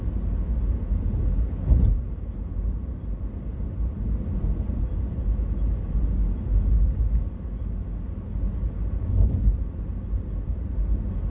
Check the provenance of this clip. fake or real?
real